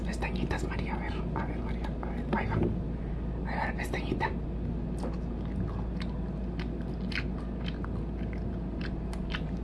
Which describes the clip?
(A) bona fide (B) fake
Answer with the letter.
A